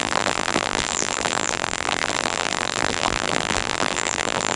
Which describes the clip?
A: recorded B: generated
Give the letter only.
B